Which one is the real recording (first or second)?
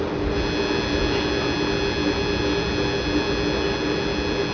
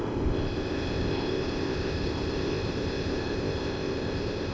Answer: first